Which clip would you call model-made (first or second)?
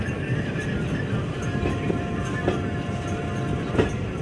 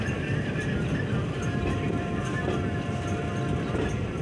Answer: second